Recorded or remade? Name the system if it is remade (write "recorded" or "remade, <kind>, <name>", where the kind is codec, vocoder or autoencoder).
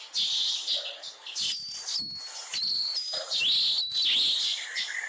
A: recorded